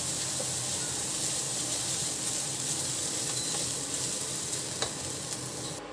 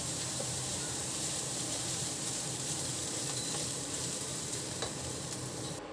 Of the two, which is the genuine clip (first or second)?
first